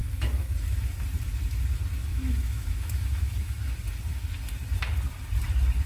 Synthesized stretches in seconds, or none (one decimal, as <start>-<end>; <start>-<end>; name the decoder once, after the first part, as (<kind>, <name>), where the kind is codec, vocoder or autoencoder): 0.0-0.9 (autoencoder, DAC-VAE); 2.1-3.6